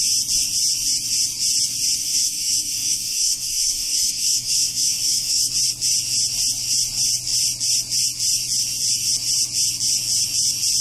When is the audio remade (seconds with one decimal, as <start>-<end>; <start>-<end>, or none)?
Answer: 2.0-5.5

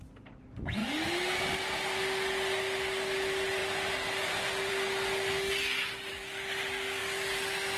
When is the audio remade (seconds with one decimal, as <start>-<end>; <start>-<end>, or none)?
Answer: 0.8-1.4

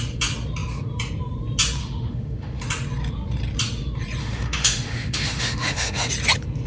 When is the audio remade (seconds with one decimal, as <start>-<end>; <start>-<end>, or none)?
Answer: 1.8-2.6; 4.2-6.1

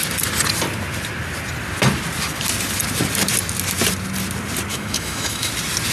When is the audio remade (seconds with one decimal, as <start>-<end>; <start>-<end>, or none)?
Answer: 4.7-5.5